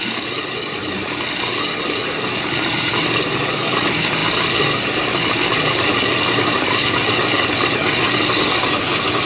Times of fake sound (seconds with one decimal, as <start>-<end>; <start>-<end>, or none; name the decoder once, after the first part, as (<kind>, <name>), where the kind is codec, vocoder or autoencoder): none